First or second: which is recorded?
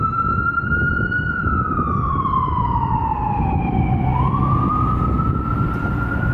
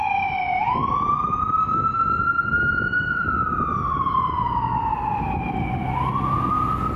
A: second